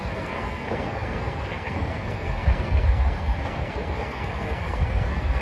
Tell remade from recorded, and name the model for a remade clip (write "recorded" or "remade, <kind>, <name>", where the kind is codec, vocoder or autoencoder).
remade, codec, SNAC